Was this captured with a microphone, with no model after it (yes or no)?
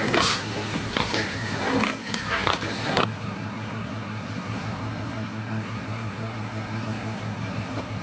no